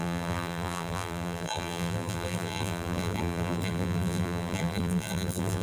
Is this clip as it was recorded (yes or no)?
no